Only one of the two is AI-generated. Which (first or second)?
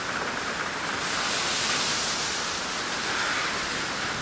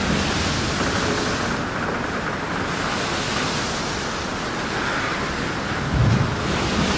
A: first